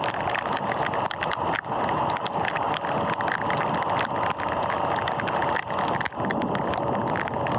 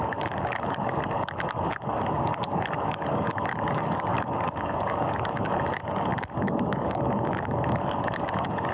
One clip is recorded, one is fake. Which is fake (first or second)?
second